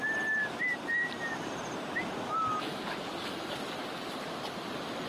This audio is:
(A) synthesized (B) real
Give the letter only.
A